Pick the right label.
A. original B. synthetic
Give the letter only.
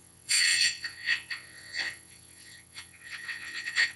B